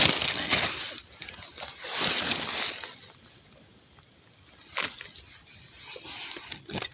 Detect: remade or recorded recorded